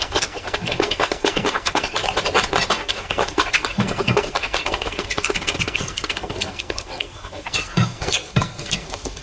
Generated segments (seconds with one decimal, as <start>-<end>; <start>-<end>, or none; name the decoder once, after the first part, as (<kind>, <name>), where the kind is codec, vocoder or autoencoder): 0.0-2.0 (codec, SNAC); 2.7-9.2